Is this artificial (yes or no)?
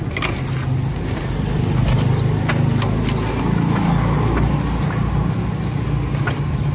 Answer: no